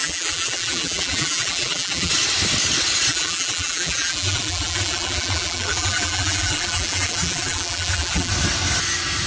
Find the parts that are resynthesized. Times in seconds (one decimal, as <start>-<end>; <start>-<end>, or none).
0.0-2.1; 3.1-8.3